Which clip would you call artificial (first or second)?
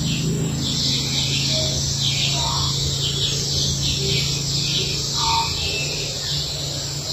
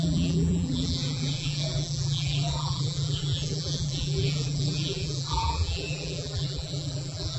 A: second